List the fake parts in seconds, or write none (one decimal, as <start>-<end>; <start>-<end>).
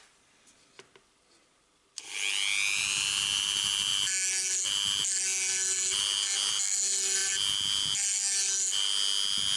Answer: none